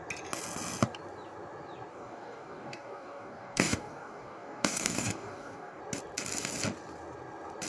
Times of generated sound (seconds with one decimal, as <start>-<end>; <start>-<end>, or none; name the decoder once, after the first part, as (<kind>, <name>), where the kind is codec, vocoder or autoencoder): 1.9-5.8 (codec, DAC)